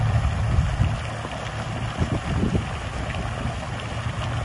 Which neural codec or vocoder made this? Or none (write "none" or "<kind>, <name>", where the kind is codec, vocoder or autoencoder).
none